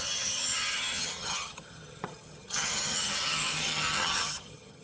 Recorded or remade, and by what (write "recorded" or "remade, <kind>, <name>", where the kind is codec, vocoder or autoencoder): remade, vocoder, HiFi-GAN